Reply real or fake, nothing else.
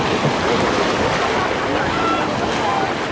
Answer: real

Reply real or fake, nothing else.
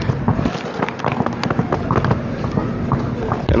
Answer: real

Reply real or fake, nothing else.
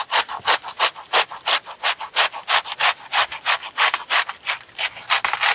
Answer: real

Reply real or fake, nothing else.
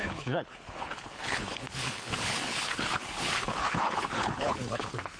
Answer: fake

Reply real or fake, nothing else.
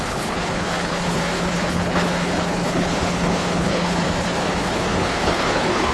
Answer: fake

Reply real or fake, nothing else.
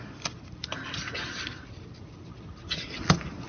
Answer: real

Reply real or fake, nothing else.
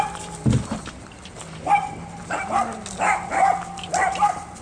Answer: real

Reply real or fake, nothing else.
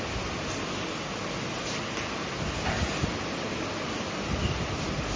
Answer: real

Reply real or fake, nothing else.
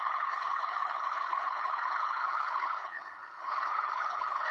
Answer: fake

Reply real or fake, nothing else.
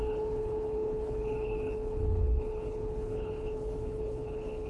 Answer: fake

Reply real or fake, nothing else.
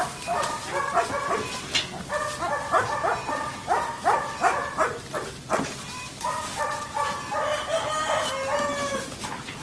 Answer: real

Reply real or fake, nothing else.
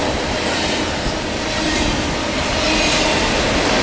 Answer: real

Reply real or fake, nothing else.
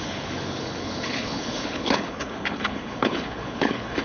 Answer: fake